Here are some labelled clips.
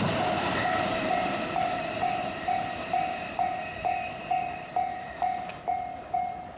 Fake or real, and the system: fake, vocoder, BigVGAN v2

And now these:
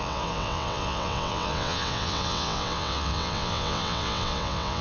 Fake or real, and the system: fake, vocoder, WaveNeXt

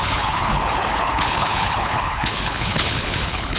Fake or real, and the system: fake, codec, HILCodec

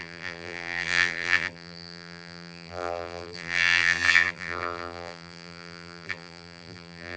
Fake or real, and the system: fake, vocoder, BigVGAN v2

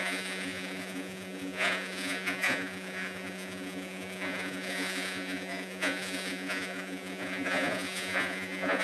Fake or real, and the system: fake, vocoder, Vocos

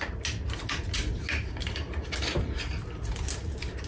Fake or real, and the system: real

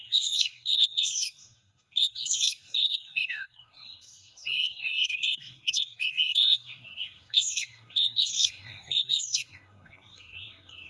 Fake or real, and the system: fake, codec, SNAC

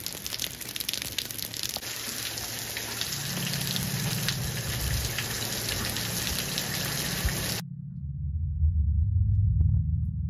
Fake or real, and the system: real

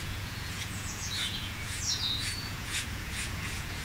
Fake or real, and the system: fake, vocoder, Vocos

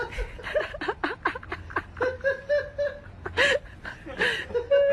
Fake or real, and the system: real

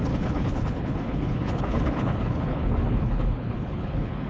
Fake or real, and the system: fake, codec, HILCodec